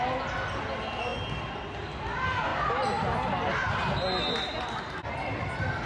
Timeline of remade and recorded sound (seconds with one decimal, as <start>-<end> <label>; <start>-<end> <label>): 0.0-5.9 recorded